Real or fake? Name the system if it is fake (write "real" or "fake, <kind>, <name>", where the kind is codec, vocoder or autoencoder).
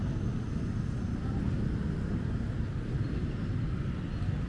real